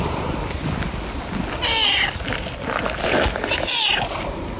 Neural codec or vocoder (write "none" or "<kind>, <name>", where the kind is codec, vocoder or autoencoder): none